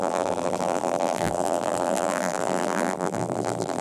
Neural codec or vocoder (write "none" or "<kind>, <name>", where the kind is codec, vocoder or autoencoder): vocoder, BigVGAN v2